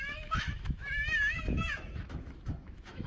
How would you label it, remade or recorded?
remade